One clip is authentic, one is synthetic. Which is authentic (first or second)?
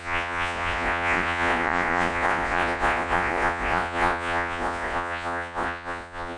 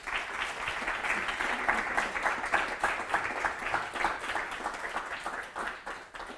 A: second